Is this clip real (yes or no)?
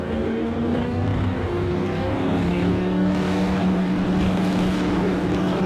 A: no